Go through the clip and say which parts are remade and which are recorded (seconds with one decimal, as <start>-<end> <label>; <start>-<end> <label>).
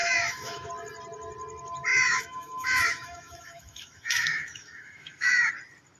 0.0-0.7 remade; 0.7-1.9 recorded; 1.9-5.5 remade; 5.5-6.0 recorded